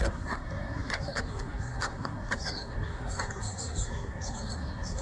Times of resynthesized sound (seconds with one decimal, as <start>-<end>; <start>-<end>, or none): 0.0-5.0